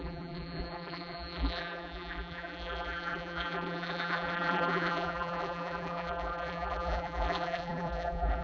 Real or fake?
fake